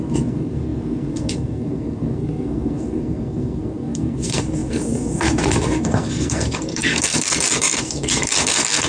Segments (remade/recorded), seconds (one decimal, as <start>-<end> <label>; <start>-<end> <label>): 0.0-8.9 remade